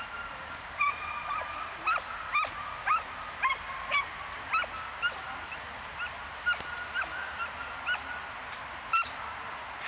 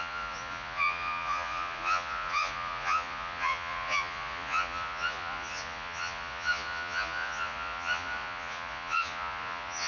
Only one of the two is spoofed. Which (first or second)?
second